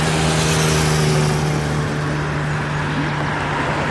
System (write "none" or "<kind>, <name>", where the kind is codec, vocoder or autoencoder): none